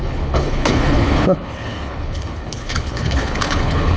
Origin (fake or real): fake